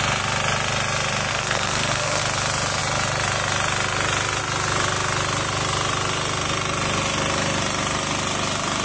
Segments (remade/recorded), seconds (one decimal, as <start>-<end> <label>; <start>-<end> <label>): 0.0-1.3 recorded; 1.3-2.2 remade; 2.2-8.8 recorded